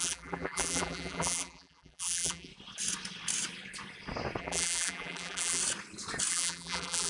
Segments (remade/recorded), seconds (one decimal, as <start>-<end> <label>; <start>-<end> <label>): 0.0-2.5 remade; 2.5-4.4 recorded; 4.4-5.6 remade; 5.6-6.3 recorded; 6.3-7.1 remade